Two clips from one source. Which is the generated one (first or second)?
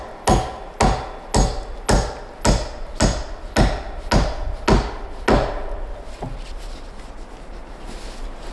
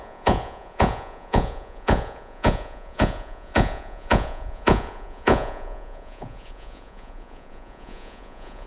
second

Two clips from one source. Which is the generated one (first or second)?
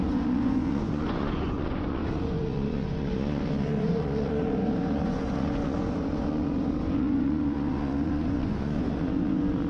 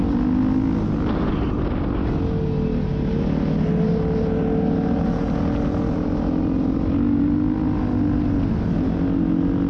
first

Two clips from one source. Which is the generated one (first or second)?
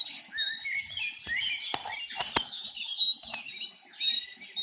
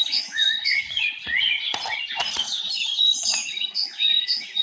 second